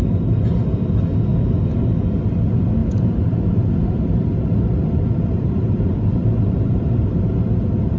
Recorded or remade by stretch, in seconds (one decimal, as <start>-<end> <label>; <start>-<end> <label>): 0.0-2.8 recorded; 2.8-7.5 remade; 7.5-8.0 recorded